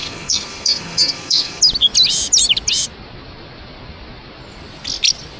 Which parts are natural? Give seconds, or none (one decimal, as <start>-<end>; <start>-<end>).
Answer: 1.6-5.4